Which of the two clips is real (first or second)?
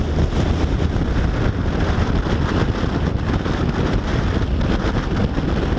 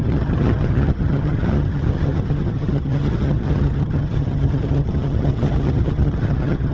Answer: first